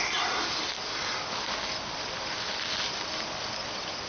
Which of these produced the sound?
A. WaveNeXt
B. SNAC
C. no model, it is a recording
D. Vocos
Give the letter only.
C